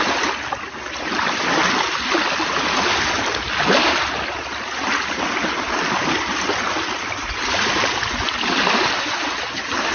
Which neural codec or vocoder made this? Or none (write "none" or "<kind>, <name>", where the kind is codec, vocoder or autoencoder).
none